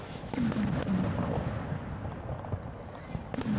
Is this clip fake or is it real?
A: real